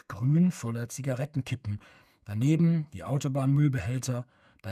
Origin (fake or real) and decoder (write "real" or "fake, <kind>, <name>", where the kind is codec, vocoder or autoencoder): fake, codec, SNAC